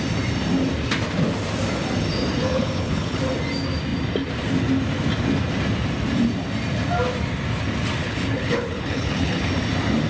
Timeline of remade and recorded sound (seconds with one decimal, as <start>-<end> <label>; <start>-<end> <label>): 0.0-2.4 recorded; 2.4-3.2 remade; 3.2-8.0 recorded; 8.0-9.5 remade; 9.5-10.1 recorded